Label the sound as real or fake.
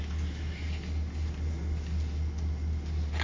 real